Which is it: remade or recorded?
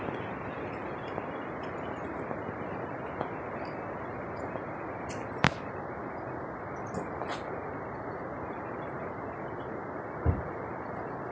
recorded